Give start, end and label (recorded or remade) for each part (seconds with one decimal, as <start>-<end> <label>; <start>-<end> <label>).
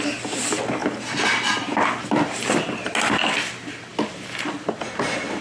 0.0-5.4 recorded